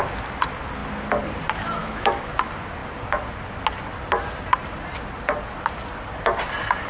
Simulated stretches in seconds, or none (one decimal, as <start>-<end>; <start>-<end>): 1.8-2.3